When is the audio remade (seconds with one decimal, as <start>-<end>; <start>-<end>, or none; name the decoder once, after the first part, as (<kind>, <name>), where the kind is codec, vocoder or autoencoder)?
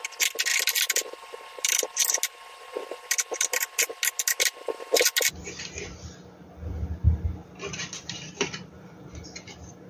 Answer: 7.4-9.2 (vocoder, BigVGAN v2)